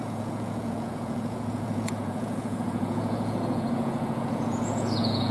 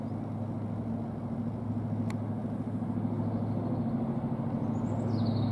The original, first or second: second